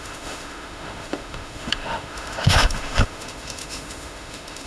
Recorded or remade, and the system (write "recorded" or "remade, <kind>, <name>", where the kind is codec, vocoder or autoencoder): remade, autoencoder, DAC-VAE